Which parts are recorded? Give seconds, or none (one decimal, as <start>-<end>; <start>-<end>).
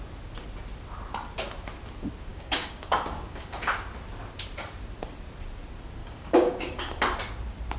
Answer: 0.0-2.3; 3.7-6.0; 7.0-7.8